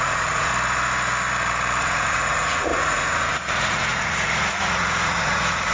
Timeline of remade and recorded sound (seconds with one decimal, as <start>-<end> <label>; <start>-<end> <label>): 0.0-0.5 remade; 0.5-1.8 recorded; 1.8-5.7 remade